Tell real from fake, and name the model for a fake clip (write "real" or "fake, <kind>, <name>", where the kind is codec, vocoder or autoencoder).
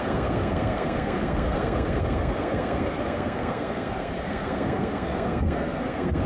fake, codec, SNAC